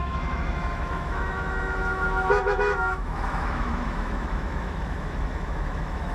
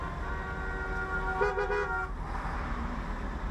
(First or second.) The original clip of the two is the second